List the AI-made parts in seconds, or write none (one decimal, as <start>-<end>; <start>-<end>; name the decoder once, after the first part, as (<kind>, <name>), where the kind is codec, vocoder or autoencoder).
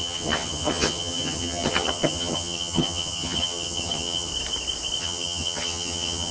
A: 0.0-4.3 (vocoder, HiFi-GAN); 5.0-6.3